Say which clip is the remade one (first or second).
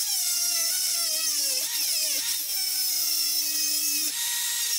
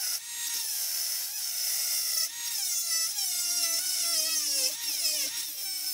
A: first